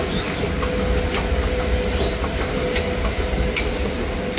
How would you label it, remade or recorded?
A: recorded